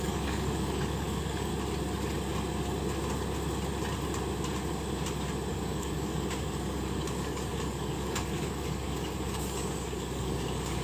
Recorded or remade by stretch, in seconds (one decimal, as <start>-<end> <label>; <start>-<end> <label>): 0.0-1.5 remade; 1.5-5.5 recorded; 5.5-10.8 remade